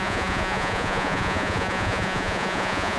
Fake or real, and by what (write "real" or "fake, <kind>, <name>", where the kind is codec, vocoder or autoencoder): fake, vocoder, Vocos